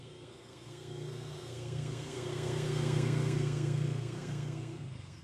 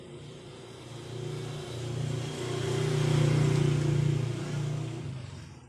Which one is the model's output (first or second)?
first